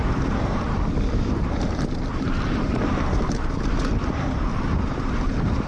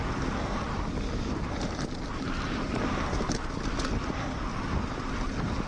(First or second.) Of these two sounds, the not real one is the first